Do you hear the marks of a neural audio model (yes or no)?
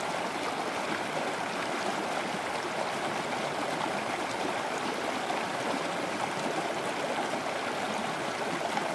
no